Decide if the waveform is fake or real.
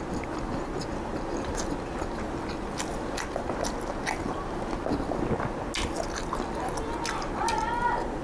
real